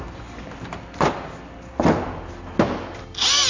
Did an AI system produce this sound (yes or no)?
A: no